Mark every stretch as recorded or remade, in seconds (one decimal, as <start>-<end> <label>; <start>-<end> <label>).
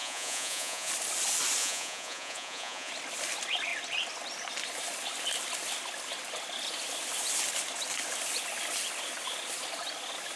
0.0-0.9 remade; 0.9-1.6 recorded; 1.6-2.9 remade; 2.9-10.4 recorded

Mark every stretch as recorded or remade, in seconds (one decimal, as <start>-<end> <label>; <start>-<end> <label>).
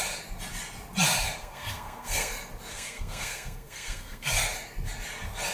0.0-1.4 recorded; 1.4-2.3 remade; 2.3-2.7 recorded; 2.7-4.3 remade; 4.3-5.5 recorded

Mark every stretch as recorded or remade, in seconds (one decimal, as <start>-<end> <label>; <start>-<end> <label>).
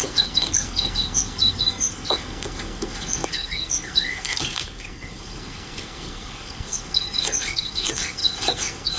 0.0-9.0 remade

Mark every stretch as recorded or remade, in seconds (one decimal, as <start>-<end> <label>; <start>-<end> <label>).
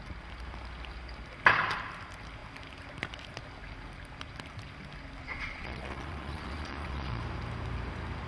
0.0-5.2 recorded; 5.2-7.2 remade; 7.2-8.3 recorded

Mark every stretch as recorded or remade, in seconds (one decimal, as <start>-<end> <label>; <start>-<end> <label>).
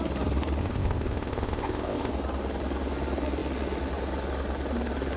0.0-0.6 recorded; 0.6-2.1 remade; 2.1-5.2 recorded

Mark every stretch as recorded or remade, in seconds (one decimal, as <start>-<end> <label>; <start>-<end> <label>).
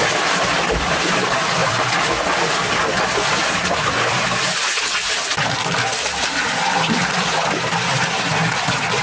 0.0-5.3 remade; 5.3-7.1 recorded; 7.1-9.0 remade